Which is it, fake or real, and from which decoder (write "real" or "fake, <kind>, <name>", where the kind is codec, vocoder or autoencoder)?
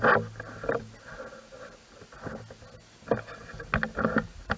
real